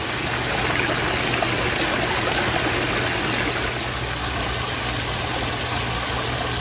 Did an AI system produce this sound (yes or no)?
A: no